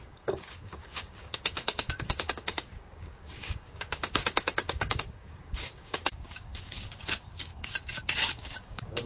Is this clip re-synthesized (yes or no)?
yes